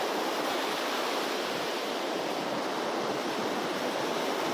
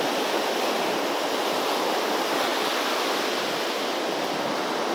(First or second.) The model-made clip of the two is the first